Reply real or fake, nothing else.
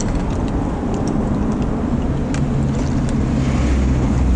real